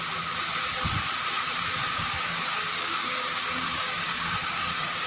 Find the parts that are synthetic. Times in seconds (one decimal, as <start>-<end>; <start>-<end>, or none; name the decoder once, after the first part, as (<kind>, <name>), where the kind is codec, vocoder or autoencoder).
1.8-5.1 (codec, DAC)